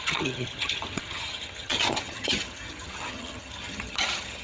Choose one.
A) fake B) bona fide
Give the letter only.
A